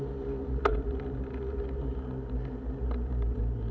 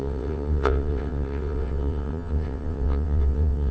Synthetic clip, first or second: second